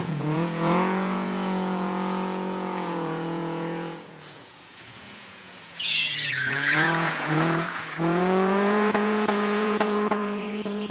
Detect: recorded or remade remade